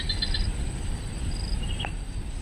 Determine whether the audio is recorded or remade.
recorded